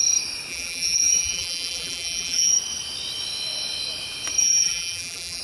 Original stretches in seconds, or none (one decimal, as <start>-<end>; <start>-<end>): 0.0-0.5; 2.5-4.4